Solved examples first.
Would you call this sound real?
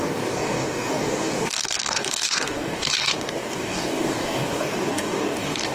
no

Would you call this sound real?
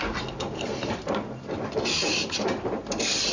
yes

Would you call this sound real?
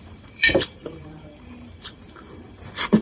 no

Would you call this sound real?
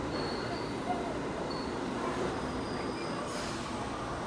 yes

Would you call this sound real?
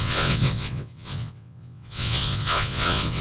no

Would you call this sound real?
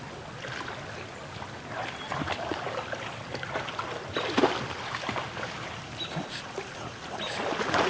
yes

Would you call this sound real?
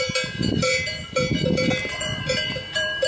no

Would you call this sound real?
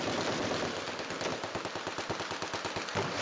yes